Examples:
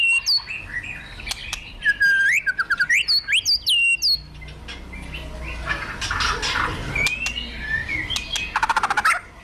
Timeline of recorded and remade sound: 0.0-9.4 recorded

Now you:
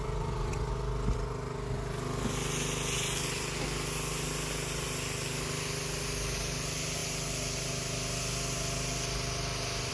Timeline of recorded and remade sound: 0.0-9.9 recorded